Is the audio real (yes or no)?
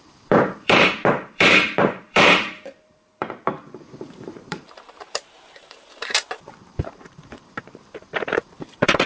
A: no